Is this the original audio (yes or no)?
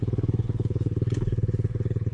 no